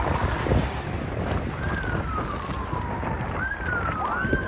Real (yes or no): no